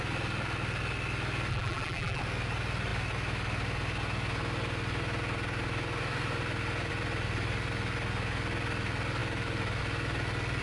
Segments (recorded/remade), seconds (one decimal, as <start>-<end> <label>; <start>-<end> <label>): 0.0-1.5 recorded; 1.5-2.2 remade; 2.2-10.6 recorded